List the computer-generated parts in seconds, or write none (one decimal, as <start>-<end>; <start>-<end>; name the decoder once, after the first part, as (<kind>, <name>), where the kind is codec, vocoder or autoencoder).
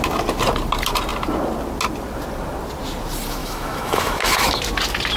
3.4-4.6 (autoencoder, DAC-VAE)